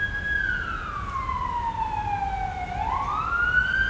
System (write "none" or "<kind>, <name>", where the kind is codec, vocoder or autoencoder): none